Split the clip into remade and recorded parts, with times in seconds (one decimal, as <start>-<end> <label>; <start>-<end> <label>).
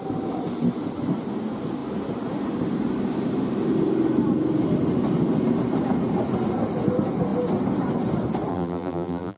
0.0-8.5 recorded; 8.5-9.4 remade